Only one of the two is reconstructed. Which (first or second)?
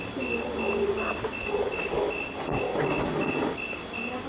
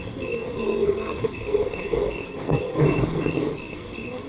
second